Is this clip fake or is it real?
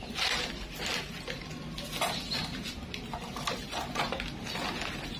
real